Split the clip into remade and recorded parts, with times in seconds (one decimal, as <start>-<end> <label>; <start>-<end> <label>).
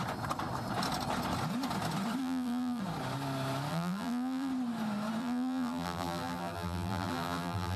0.0-2.2 recorded; 2.2-2.8 remade; 2.8-3.7 recorded; 3.7-4.5 remade; 4.5-5.2 recorded; 5.2-7.8 remade